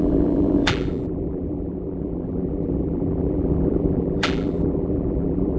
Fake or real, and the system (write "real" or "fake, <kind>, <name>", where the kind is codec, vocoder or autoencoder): fake, vocoder, BigVGAN v2